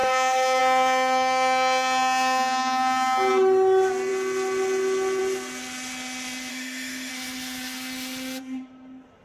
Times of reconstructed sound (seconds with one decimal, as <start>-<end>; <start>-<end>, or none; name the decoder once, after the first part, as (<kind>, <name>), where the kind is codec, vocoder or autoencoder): 0.0-0.6 (autoencoder, DAC-VAE); 6.5-7.1